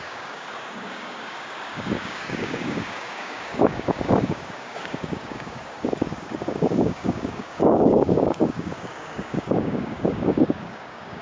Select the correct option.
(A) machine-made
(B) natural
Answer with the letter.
A